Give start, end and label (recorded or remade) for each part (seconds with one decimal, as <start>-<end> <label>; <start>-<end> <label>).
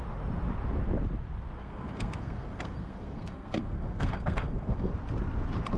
0.0-1.6 recorded; 1.6-4.9 remade; 4.9-5.8 recorded